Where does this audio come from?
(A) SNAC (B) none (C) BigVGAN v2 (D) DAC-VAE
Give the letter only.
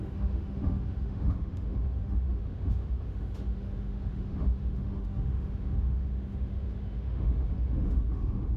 D